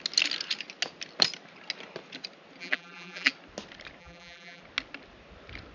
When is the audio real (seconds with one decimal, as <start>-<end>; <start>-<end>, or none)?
0.0-2.6; 3.3-4.0; 4.6-5.7